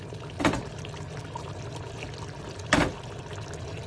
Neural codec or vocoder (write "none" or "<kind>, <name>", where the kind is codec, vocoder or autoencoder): none